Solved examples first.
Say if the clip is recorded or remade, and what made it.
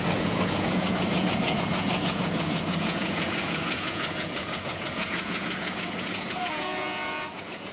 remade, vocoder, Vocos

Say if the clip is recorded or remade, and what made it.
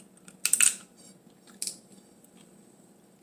recorded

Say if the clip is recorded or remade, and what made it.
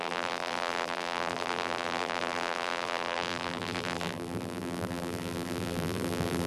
remade, vocoder, BigVGAN v2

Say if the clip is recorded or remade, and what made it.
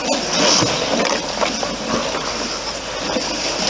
recorded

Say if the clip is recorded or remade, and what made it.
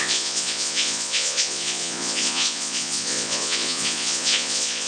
remade, vocoder, Vocos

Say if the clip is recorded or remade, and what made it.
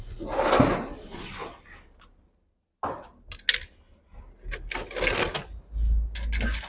recorded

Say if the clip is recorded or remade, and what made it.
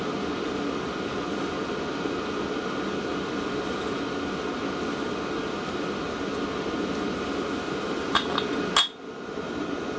recorded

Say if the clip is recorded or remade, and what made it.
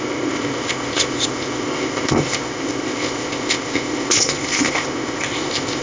remade, codec, ZipCodec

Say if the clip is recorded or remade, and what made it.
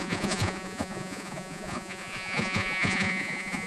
remade, vocoder, Vocos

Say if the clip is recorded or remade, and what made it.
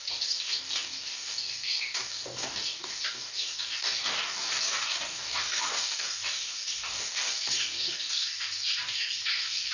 remade, codec, DAC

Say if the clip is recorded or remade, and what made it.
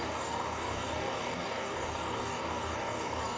remade, codec, DAC